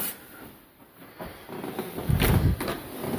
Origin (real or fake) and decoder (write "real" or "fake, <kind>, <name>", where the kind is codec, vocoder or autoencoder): real